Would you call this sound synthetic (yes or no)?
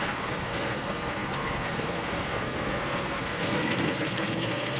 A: yes